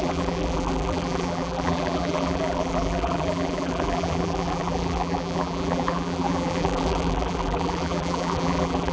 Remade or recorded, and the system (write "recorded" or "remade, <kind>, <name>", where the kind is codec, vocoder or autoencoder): remade, vocoder, BigVGAN v2